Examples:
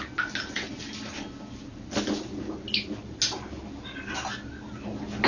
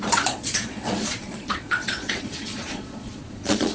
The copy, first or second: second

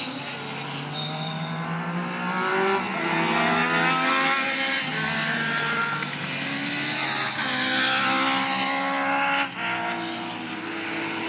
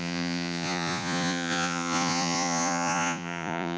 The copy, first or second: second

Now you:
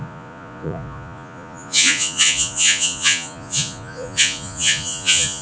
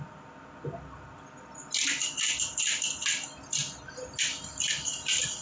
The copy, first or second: first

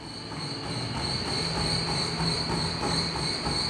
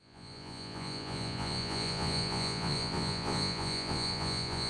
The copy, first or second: second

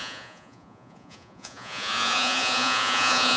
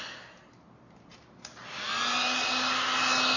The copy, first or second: first